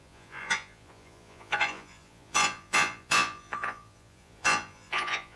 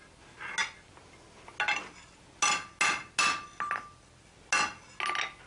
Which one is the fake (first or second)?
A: first